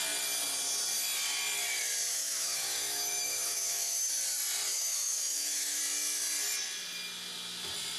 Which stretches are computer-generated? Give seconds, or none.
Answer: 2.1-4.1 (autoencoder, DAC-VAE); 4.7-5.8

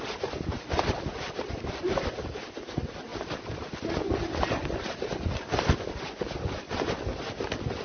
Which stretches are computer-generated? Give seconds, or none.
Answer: none

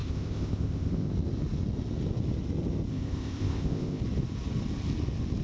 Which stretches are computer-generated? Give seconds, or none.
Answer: 0.0-1.1 (codec, ZipCodec); 2.9-4.0

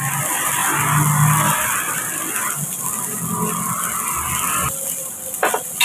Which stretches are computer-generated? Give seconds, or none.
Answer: none

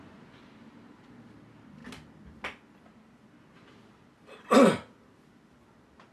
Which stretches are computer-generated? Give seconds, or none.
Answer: none

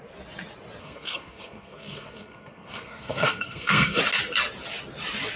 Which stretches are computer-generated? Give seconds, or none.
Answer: 0.8-4.0 (codec, SNAC)

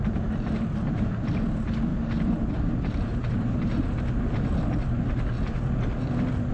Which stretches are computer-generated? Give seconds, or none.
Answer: 3.1-3.9 (vocoder, BigVGAN v2)